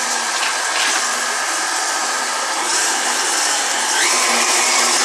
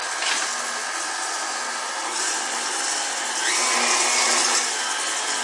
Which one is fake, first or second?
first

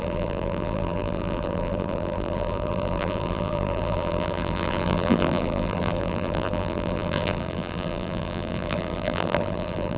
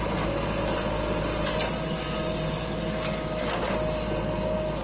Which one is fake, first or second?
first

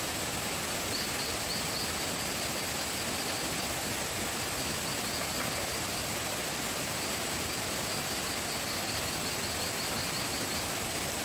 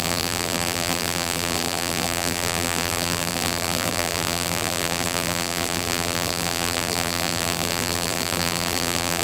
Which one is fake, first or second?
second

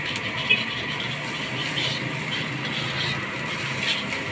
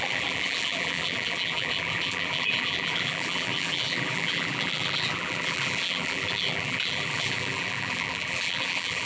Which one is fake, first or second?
second